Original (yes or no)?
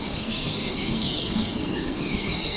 no